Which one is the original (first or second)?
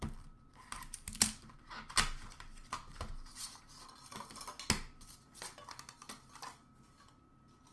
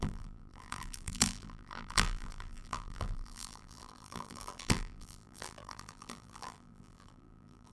first